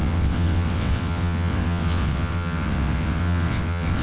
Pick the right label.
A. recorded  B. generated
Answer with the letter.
B